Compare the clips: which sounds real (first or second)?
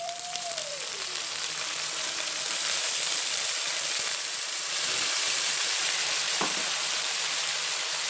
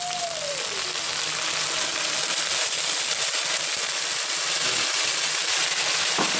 second